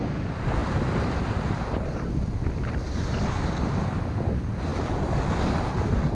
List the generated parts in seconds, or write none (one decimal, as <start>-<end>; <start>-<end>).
none